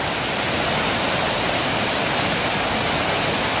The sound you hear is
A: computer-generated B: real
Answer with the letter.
B